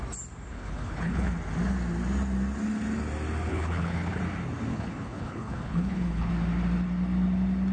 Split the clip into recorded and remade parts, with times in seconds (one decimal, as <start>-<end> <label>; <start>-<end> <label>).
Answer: 0.0-0.5 recorded; 0.5-1.3 remade; 1.3-3.5 recorded; 3.5-4.2 remade; 4.2-4.7 recorded; 4.7-6.3 remade; 6.3-7.7 recorded